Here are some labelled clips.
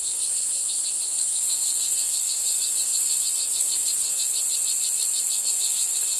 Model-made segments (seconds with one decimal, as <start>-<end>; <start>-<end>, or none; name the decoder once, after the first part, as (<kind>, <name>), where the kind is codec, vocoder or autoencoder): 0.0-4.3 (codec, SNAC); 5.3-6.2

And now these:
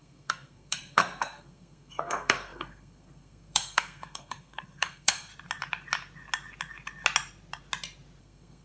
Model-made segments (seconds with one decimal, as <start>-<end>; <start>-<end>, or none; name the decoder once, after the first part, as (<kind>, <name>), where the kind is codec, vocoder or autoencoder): 0.0-5.3 (codec, SNAC); 8.2-8.6

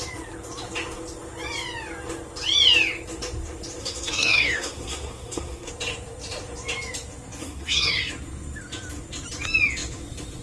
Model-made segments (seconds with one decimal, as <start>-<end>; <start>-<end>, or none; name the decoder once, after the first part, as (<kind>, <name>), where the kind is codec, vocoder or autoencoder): 3.8-5.7 (codec, SNAC); 7.4-8.1